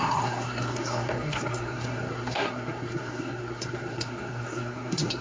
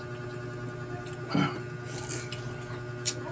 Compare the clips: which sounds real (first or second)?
second